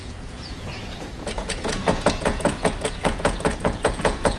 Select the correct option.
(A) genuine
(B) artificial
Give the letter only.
B